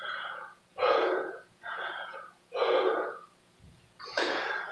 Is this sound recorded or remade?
remade